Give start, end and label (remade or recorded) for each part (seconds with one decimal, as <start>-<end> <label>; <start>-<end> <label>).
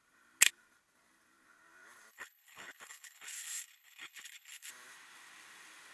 0.0-2.1 recorded; 2.1-4.7 remade; 4.7-5.9 recorded